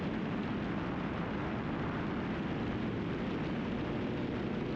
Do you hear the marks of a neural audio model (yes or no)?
no